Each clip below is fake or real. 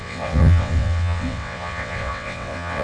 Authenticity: fake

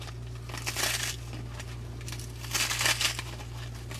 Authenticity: real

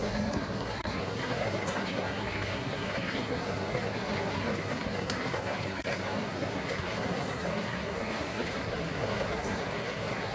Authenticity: fake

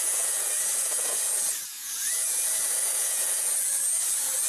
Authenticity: fake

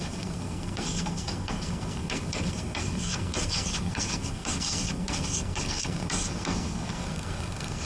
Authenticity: fake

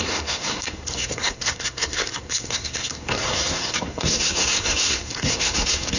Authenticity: fake